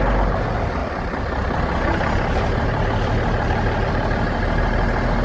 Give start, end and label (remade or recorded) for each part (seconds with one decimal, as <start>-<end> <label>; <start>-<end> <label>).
0.0-5.2 recorded